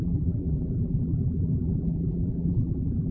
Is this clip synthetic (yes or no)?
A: yes